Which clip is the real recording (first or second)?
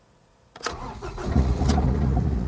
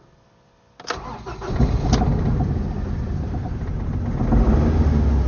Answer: second